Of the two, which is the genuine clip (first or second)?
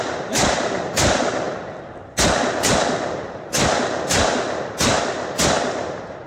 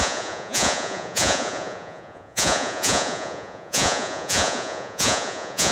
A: first